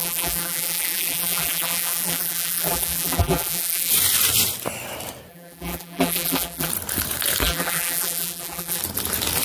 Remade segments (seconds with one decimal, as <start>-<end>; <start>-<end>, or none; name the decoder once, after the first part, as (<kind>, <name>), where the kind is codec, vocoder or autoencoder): 0.0-3.9 (vocoder, BigVGAN v2); 5.3-6.7; 7.4-8.8